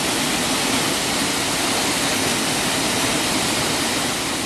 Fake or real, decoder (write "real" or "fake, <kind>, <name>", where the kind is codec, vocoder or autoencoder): real